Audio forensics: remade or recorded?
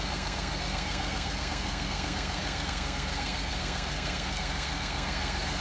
remade